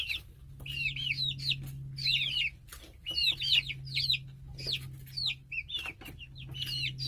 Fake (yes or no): no